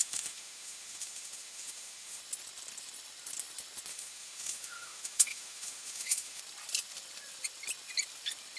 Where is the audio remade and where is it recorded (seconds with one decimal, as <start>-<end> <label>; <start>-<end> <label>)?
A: 0.0-2.2 remade; 2.2-3.9 recorded; 3.9-6.4 remade; 6.4-8.6 recorded